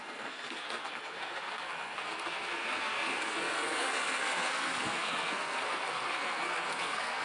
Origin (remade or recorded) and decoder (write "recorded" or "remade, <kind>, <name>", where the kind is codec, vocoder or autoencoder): remade, codec, SNAC